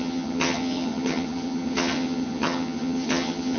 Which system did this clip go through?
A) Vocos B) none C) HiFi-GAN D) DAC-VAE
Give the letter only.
C